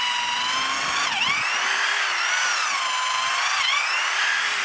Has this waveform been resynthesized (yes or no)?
no